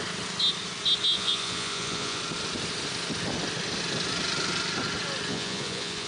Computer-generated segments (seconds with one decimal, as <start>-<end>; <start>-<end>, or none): 1.1-2.2; 5.3-6.1